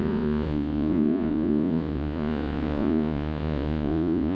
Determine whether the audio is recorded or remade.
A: remade